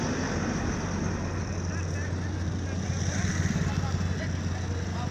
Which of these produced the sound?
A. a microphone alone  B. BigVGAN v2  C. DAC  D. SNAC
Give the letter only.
A